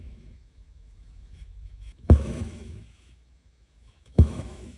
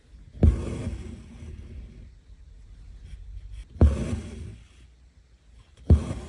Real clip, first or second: second